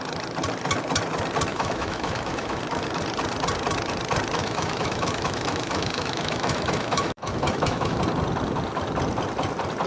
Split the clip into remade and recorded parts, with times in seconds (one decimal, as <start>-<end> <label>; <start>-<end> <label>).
0.0-1.5 recorded; 1.5-2.6 remade; 2.6-4.4 recorded; 4.4-8.0 remade; 8.0-9.9 recorded

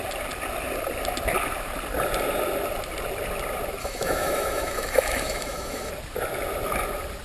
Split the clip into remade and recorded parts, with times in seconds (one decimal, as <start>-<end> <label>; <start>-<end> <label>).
0.0-3.8 recorded; 3.8-5.9 remade; 5.9-7.2 recorded

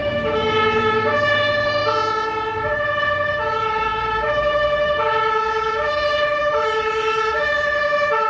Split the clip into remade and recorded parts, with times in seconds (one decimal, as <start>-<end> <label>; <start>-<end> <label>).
0.0-1.8 remade; 1.8-3.0 recorded; 3.0-8.3 remade

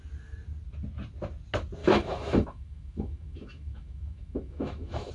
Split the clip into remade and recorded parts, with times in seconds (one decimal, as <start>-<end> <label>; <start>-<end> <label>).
0.0-1.8 recorded; 1.8-5.1 remade

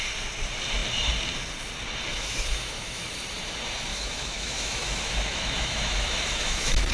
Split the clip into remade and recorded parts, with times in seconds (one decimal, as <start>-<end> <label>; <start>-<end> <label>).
0.0-2.1 recorded; 2.1-3.1 remade; 3.1-3.9 recorded; 3.9-6.9 remade

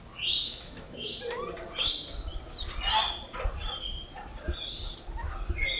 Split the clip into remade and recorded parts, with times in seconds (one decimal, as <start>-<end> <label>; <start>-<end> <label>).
0.0-0.4 recorded; 0.4-1.2 remade; 1.2-5.8 recorded